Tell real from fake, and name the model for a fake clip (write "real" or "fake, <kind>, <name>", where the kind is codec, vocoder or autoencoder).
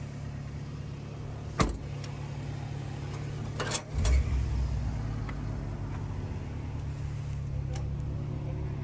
real